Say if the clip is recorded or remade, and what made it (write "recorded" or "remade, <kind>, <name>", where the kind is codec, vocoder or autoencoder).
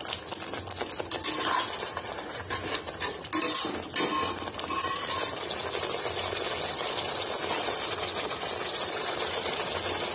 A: recorded